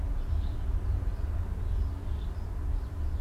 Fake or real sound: real